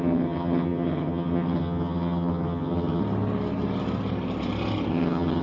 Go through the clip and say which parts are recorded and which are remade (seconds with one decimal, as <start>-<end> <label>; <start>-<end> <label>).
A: 0.0-3.0 remade; 3.0-4.9 recorded; 4.9-5.4 remade

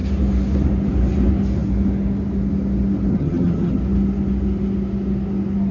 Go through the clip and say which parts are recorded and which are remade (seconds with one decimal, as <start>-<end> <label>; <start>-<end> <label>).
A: 0.0-3.1 recorded; 3.1-3.8 remade; 3.8-5.7 recorded

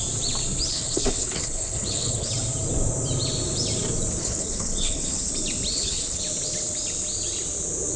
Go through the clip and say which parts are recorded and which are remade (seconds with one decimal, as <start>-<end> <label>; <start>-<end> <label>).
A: 0.0-0.7 recorded; 0.7-2.3 remade; 2.3-4.2 recorded; 4.2-5.3 remade; 5.3-5.7 recorded; 5.7-6.2 remade; 6.2-8.0 recorded

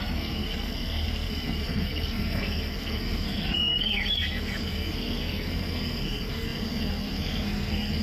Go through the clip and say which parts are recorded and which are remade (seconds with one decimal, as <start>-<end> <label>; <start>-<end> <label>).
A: 0.0-8.0 remade

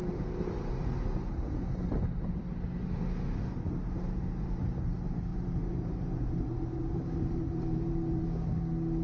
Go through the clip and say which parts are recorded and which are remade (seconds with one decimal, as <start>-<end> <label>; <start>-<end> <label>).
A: 0.0-1.3 remade; 1.3-5.3 recorded; 5.3-8.2 remade; 8.2-9.0 recorded

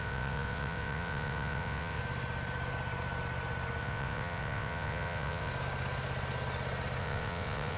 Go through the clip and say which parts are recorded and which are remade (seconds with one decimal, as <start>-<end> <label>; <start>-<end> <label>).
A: 0.0-2.0 remade; 2.0-3.8 recorded; 3.8-5.5 remade; 5.5-7.0 recorded; 7.0-7.8 remade